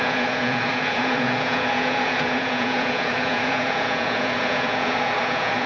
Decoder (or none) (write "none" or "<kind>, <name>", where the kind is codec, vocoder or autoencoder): vocoder, Vocos